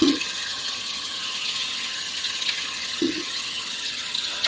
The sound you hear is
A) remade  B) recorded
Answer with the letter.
A